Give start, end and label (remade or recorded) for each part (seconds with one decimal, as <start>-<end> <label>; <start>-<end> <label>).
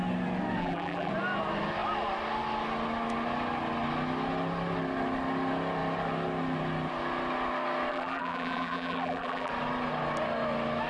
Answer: 0.0-0.6 recorded; 0.6-1.1 remade; 1.1-7.9 recorded; 7.9-9.5 remade; 9.5-10.9 recorded